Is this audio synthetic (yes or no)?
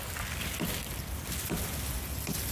no